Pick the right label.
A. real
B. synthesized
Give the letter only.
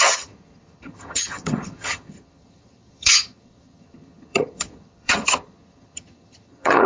B